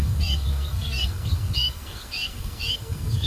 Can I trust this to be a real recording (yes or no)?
no